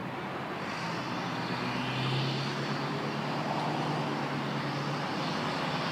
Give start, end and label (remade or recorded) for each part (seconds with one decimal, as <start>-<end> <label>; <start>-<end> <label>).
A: 0.0-5.9 recorded

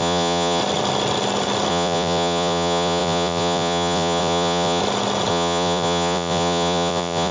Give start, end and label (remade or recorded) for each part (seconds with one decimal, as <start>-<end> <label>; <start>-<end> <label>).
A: 0.0-0.6 remade; 0.6-1.7 recorded; 1.7-4.8 remade; 4.8-5.3 recorded; 5.3-7.3 remade